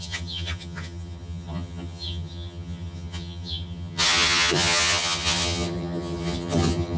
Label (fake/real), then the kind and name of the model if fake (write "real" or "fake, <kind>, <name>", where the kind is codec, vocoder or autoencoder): fake, vocoder, HiFi-GAN